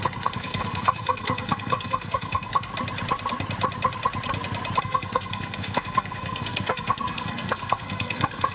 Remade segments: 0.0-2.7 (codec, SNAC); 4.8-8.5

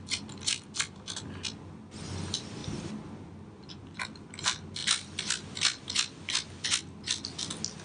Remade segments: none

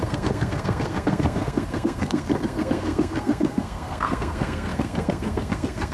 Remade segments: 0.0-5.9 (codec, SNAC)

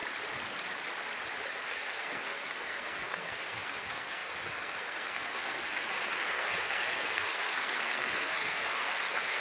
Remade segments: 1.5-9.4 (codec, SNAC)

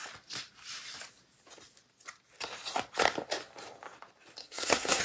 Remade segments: 4.4-5.0 (codec, SNAC)